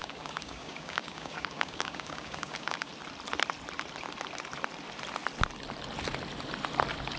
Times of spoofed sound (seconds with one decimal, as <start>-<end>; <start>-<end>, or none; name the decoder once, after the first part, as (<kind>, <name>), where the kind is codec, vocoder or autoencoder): 0.0-2.9 (codec, DAC)